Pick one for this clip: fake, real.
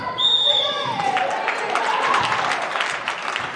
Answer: fake